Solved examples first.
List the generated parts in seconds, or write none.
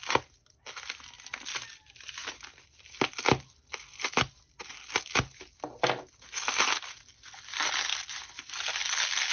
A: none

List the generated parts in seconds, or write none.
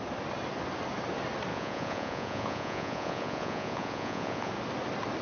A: 1.5-4.5 (vocoder, Vocos)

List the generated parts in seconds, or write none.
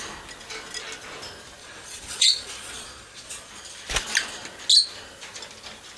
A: 1.6-3.5 (vocoder, Vocos)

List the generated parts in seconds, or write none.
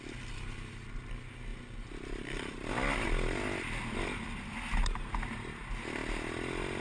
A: none